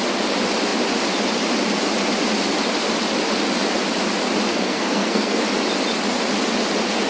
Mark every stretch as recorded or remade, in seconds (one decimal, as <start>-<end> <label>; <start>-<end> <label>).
0.0-4.5 recorded; 4.5-5.4 remade; 5.4-7.1 recorded